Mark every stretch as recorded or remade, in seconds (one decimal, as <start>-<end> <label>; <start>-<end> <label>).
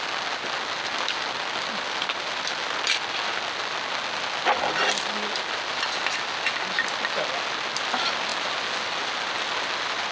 0.0-10.1 recorded